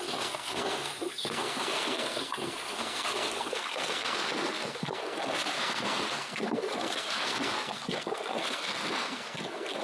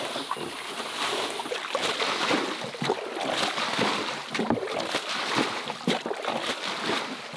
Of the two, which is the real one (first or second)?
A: second